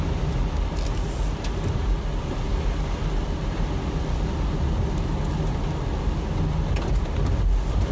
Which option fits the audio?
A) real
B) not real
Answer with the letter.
A